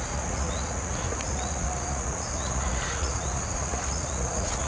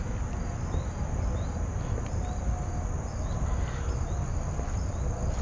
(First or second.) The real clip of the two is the second